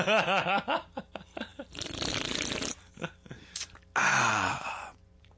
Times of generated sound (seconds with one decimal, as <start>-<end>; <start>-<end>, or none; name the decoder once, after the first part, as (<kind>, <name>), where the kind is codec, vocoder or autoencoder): 4.3-5.4 (vocoder, Vocos)